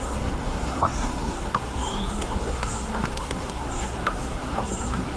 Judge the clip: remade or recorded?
remade